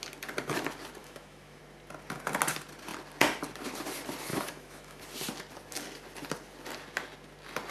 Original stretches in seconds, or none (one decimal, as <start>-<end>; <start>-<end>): 0.0-1.0; 1.6-4.3; 5.0-7.7